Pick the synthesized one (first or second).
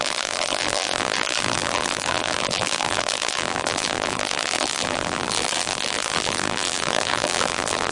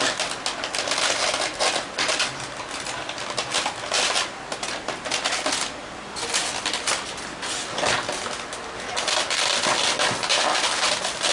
first